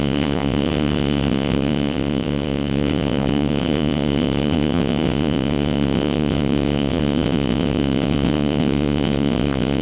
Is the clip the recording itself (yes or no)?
no